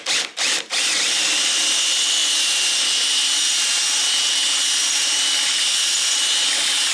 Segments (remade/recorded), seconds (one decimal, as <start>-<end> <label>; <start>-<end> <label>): 0.0-6.9 recorded